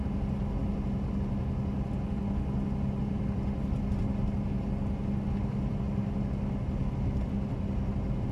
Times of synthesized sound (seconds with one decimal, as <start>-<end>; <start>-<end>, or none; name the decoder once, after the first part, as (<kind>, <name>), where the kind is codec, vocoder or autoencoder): none